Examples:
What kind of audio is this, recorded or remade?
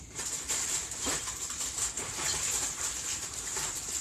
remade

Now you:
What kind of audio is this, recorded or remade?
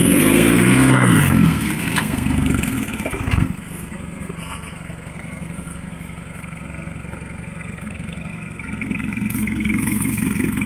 remade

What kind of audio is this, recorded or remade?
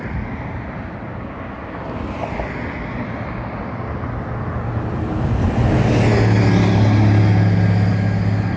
recorded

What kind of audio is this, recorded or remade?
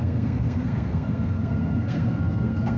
remade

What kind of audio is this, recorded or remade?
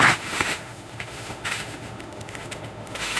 remade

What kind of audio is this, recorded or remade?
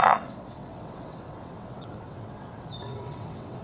remade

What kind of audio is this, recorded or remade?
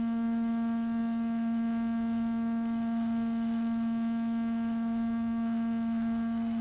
remade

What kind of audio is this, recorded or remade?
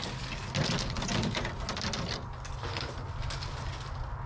recorded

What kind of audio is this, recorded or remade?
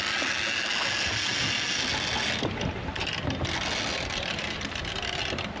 recorded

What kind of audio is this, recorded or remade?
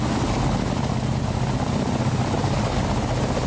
recorded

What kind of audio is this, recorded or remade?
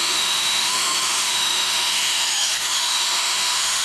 remade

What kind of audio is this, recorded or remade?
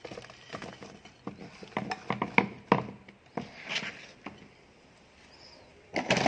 recorded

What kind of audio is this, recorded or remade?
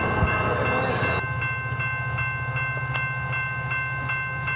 recorded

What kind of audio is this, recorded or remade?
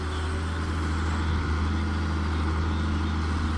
recorded